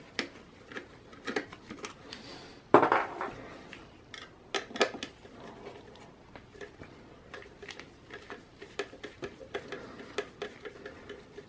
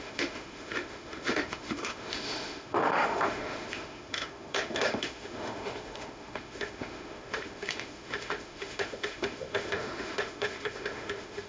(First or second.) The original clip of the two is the first